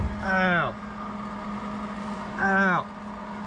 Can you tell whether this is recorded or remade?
recorded